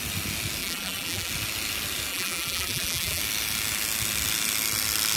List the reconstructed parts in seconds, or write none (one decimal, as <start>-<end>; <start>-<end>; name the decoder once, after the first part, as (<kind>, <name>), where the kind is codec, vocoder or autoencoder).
0.6-1.3 (vocoder, BigVGAN v2); 2.1-3.2